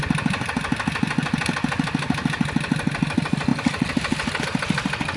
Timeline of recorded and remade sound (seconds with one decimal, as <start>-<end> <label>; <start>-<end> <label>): 0.0-5.2 recorded